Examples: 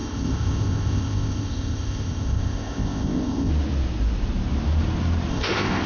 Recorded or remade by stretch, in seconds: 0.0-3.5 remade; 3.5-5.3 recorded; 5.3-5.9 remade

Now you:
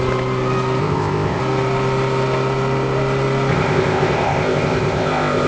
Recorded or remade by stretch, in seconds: 0.0-0.8 recorded; 0.8-1.4 remade; 1.4-3.5 recorded; 3.5-5.5 remade

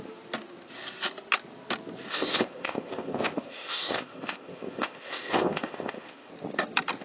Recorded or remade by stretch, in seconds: 0.0-2.1 recorded; 2.1-6.3 remade; 6.3-7.0 recorded

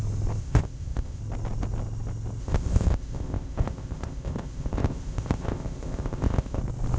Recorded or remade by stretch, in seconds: 0.0-0.4 recorded; 0.4-1.2 remade; 1.2-2.4 recorded; 2.4-6.6 remade; 6.6-7.0 recorded

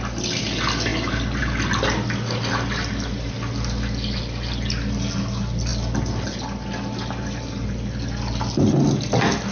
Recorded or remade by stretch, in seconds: 0.0-9.5 recorded

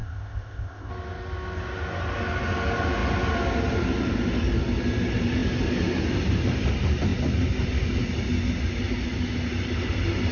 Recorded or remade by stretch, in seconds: 0.0-0.9 remade; 0.9-10.3 recorded

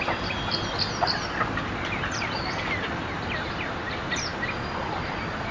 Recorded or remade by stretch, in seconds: 0.0-5.5 recorded